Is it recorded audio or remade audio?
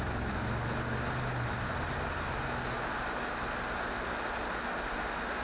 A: recorded